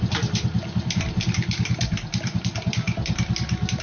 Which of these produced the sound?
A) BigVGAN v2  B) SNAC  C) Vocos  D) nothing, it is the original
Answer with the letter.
A